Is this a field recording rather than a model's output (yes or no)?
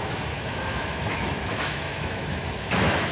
no